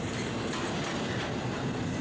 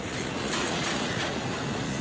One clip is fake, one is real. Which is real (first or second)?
first